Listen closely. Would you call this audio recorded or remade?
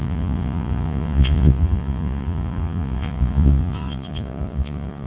remade